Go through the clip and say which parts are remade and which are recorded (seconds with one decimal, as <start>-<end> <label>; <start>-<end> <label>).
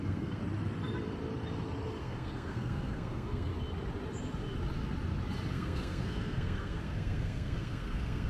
0.0-0.4 remade; 0.4-2.0 recorded; 2.0-3.5 remade; 3.5-5.5 recorded; 5.5-8.3 remade